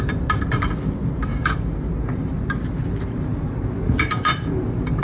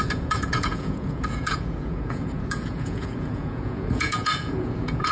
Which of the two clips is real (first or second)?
first